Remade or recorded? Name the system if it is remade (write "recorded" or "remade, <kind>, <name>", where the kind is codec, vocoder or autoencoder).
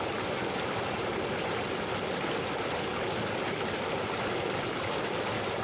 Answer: recorded